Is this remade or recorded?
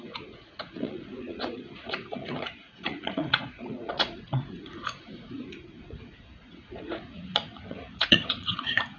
remade